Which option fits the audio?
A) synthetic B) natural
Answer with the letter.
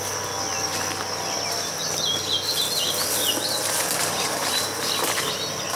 B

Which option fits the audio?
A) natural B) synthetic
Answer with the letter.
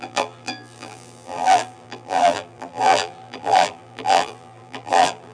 B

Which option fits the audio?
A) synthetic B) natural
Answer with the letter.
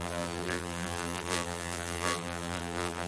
A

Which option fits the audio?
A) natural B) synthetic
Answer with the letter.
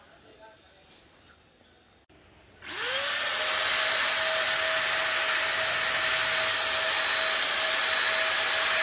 A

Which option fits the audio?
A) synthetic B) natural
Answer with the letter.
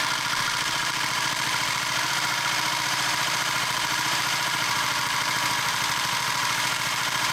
A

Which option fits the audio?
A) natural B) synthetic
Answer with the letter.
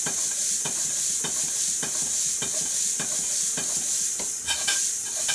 B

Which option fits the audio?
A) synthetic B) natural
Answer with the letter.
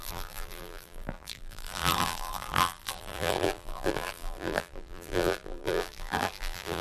A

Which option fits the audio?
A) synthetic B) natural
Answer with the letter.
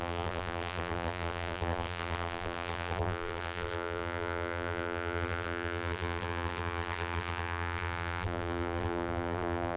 A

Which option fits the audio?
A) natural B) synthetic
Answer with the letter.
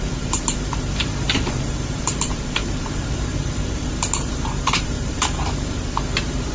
B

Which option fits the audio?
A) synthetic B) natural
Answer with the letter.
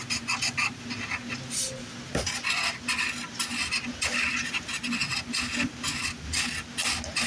B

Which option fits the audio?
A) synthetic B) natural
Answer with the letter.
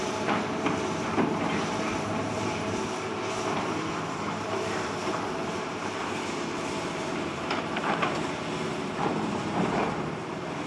A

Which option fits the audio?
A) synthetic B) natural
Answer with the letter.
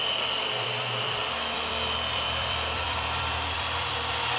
A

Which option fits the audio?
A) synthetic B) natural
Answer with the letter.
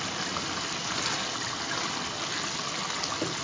B